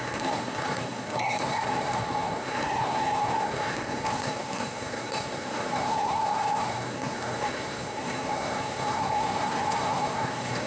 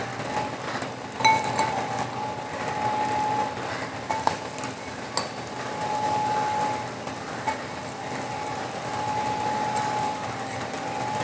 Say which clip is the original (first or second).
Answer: second